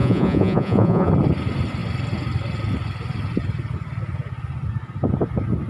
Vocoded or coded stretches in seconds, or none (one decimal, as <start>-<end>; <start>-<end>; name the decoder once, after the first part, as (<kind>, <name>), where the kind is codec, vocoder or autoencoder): 0.0-1.1 (vocoder, Vocos)